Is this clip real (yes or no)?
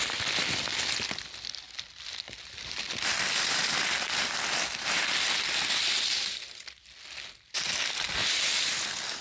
yes